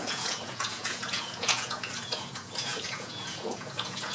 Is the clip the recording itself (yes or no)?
no